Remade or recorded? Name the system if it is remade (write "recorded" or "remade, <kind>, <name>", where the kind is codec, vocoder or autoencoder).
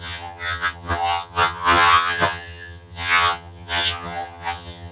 remade, vocoder, HiFi-GAN